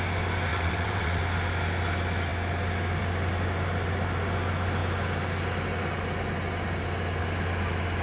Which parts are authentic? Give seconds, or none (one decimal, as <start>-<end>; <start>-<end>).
0.0-0.5; 1.2-8.0